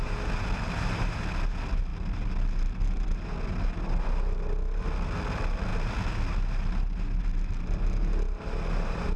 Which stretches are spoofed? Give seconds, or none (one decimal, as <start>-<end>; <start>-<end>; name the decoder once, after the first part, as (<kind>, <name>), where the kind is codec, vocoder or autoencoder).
none